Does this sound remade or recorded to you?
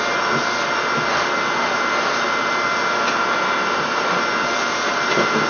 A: recorded